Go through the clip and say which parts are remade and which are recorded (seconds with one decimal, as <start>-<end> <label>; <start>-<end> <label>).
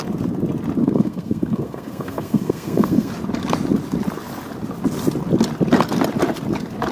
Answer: 0.0-0.8 recorded; 0.8-3.1 remade; 3.1-6.9 recorded